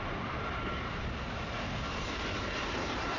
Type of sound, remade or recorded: remade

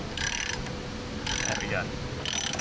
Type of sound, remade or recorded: recorded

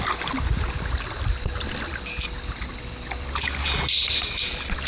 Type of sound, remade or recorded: recorded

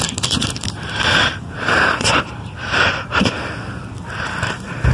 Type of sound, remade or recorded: remade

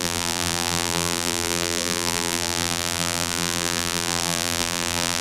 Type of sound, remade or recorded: remade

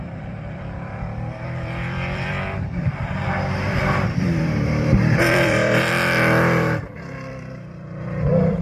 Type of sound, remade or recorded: remade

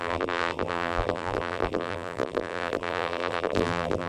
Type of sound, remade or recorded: remade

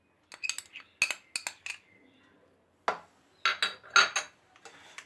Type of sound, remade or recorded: recorded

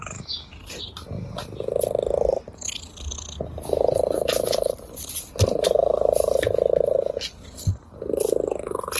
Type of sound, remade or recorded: recorded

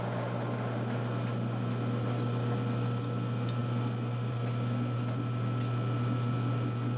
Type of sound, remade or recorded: recorded